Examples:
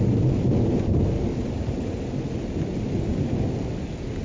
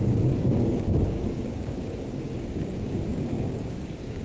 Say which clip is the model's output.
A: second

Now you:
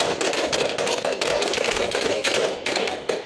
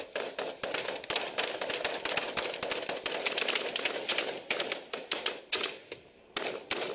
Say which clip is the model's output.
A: first